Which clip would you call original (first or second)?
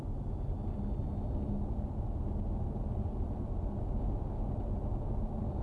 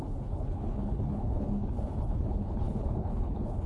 first